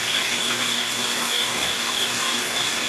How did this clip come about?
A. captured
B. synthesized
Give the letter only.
B